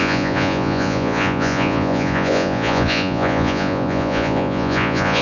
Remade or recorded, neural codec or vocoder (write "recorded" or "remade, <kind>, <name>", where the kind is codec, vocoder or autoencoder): remade, vocoder, Vocos